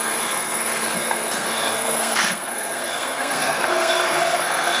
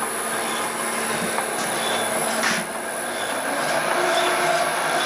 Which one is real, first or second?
second